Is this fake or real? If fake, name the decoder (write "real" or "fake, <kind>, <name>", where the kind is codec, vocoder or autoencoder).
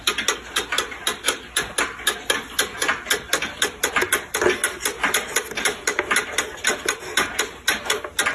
real